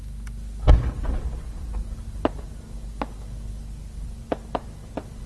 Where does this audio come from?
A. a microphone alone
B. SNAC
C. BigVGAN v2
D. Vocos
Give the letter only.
A